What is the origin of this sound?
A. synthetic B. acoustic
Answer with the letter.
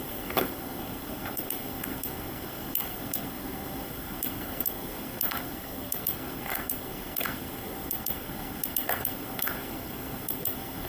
A